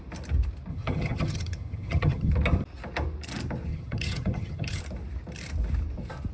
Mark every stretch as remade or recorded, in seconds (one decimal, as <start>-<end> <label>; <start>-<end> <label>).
0.0-0.7 recorded; 0.7-2.3 remade; 2.3-3.7 recorded; 3.7-4.8 remade; 4.8-6.3 recorded